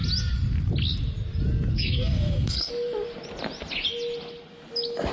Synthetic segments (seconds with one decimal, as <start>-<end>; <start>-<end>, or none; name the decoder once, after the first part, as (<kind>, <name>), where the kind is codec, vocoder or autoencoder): 1.7-2.7 (codec, SNAC)